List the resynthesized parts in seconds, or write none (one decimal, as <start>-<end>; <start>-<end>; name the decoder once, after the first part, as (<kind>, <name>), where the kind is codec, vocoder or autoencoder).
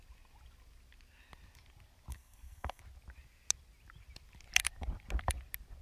2.1-2.8 (codec, SNAC)